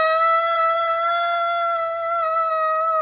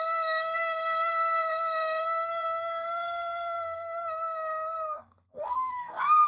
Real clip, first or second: first